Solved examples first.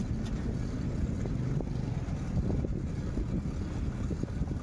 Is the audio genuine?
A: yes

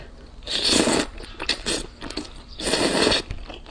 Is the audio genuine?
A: yes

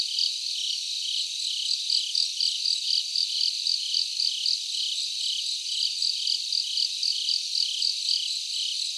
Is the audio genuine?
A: yes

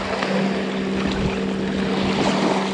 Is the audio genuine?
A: yes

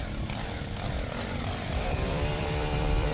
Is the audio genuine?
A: no